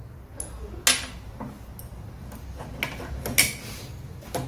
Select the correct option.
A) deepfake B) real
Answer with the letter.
B